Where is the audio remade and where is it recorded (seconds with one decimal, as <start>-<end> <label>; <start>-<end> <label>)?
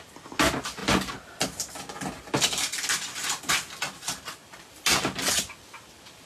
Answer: 0.0-6.3 recorded